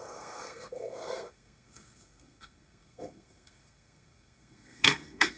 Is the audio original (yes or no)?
no